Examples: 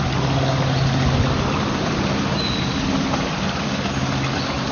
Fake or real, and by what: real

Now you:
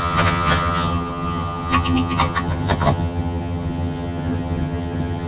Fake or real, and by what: fake, vocoder, HiFi-GAN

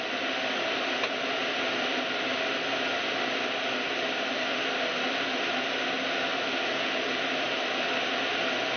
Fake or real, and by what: real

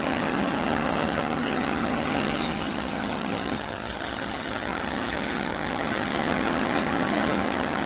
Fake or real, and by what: fake, vocoder, HiFi-GAN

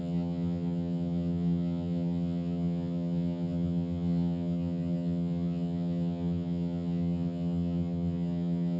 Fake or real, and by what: fake, vocoder, HiFi-GAN